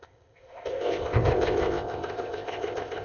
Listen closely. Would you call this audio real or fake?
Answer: fake